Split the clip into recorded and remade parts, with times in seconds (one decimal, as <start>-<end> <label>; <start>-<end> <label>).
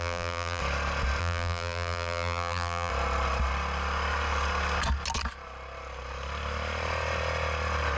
0.0-0.6 remade; 0.6-1.2 recorded; 1.2-2.9 remade; 2.9-8.0 recorded